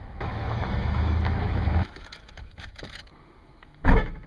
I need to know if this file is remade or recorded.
remade